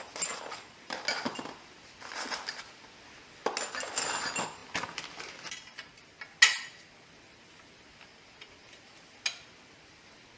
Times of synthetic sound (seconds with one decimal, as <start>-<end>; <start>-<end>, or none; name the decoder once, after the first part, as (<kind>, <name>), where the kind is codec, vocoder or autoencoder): none